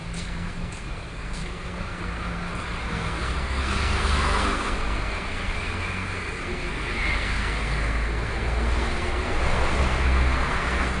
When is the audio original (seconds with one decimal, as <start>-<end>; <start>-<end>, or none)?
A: none

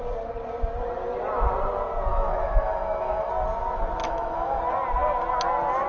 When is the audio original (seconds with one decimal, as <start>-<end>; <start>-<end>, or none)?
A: 0.0-2.1; 3.3-4.0; 4.6-5.9

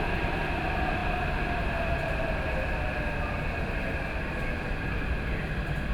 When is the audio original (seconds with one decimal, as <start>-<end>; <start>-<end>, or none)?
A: 0.0-5.9

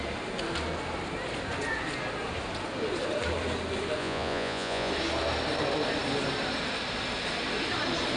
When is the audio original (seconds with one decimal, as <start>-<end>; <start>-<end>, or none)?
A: 0.0-4.0; 4.9-8.2

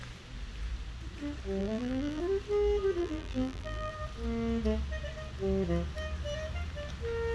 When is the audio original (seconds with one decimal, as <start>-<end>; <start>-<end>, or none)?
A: 0.0-1.6; 2.2-3.0; 3.9-7.3

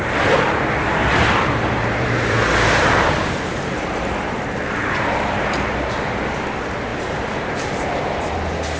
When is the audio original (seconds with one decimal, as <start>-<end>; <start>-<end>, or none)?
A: 0.0-1.0; 5.7-6.9; 8.3-8.8